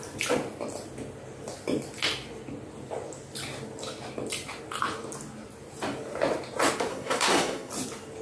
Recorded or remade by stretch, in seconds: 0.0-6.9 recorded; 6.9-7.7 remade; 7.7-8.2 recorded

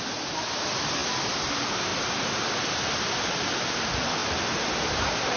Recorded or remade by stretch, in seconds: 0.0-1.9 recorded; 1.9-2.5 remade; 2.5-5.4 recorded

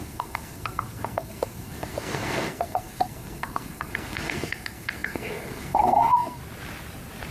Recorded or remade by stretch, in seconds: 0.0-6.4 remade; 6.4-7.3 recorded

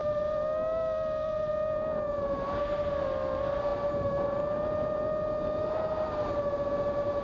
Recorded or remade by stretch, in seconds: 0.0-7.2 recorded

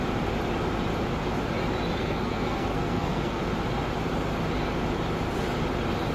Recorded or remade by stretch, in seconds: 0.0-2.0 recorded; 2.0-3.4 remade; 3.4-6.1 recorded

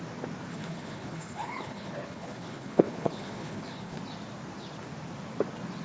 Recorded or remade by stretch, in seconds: 0.0-0.5 recorded; 0.5-4.0 remade; 4.0-5.8 recorded

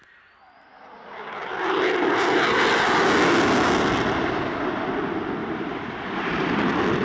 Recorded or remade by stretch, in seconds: 0.0-5.4 recorded; 5.4-6.6 remade; 6.6-7.0 recorded

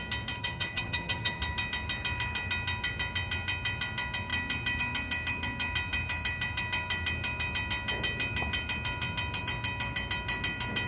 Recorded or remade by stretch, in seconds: 0.0-0.4 recorded; 0.4-1.4 remade; 1.4-10.9 recorded